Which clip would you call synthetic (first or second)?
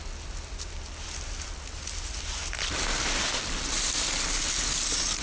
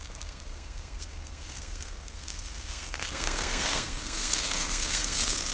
second